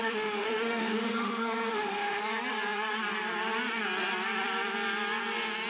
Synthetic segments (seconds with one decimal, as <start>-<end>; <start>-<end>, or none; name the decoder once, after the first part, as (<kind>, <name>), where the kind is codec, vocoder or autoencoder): 0.0-2.2 (autoencoder, DAC-VAE)